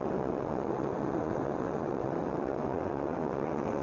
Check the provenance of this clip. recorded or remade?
remade